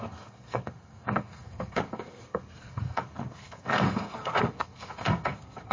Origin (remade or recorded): remade